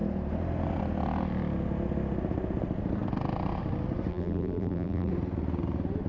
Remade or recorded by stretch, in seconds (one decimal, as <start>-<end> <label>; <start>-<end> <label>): 0.0-4.1 recorded; 4.1-5.1 remade; 5.1-6.1 recorded